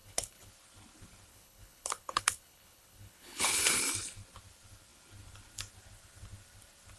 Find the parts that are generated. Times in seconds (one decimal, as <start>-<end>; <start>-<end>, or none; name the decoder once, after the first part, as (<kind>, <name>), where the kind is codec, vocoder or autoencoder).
0.0-0.5 (codec, HILCodec); 1.3-3.7